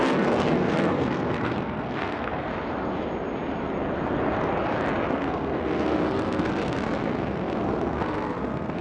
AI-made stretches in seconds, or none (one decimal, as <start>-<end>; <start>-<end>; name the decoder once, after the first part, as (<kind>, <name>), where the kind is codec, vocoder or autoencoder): 0.0-2.5 (codec, SNAC); 5.1-8.8